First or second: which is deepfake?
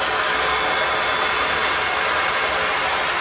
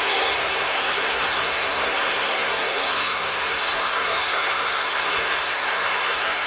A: second